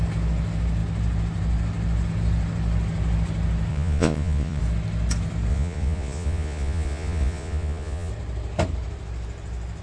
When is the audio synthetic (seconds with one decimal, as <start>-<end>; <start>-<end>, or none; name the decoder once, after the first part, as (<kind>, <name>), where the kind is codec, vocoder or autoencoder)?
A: 3.7-4.6 (vocoder, Vocos); 5.5-8.1